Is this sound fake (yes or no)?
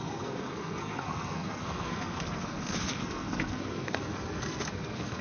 yes